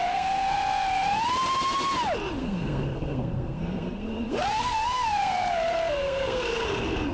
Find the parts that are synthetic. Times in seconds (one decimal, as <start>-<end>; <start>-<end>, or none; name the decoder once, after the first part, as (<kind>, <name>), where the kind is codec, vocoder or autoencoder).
0.0-1.2 (codec, SNAC); 2.4-7.1